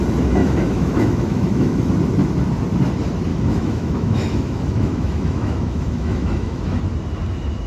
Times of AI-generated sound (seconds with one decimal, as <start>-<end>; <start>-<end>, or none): 0.4-1.9; 3.3-6.8